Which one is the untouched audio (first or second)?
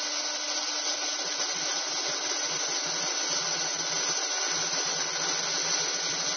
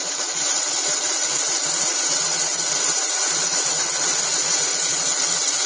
first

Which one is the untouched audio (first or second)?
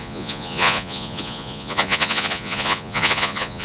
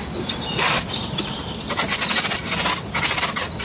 second